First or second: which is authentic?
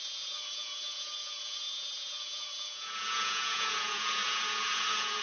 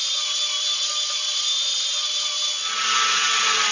second